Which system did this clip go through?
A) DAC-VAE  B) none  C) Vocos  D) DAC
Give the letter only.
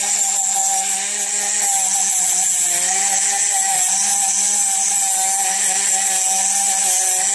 B